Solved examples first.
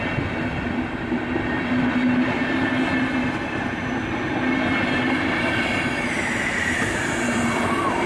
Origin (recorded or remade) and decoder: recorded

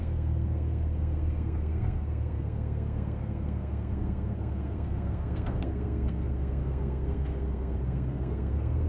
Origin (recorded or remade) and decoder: remade, codec, SNAC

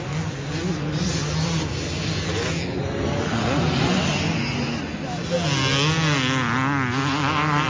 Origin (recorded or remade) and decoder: recorded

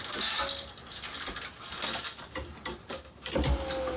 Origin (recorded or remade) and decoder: recorded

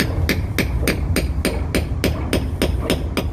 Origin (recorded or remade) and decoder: recorded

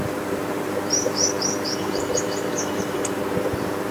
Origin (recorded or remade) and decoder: remade, vocoder, BigVGAN v2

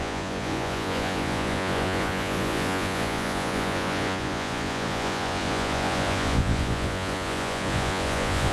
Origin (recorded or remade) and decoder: remade, vocoder, Vocos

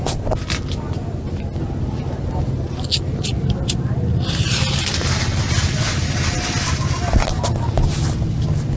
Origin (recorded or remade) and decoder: recorded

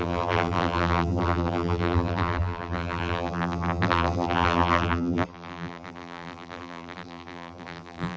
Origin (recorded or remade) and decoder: remade, vocoder, BigVGAN v2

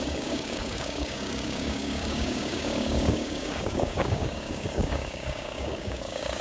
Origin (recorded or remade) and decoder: remade, codec, DAC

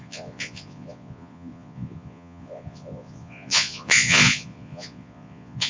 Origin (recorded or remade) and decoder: remade, vocoder, Vocos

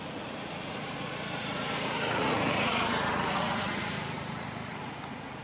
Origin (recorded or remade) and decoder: remade, vocoder, Vocos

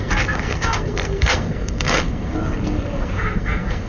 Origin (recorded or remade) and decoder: remade, codec, SNAC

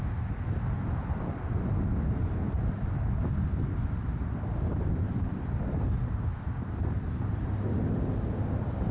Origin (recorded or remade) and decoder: recorded